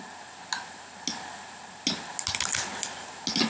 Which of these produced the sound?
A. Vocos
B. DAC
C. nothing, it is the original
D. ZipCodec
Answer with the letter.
C